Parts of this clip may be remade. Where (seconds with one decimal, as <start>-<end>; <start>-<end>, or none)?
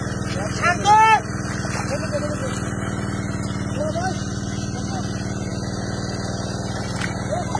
none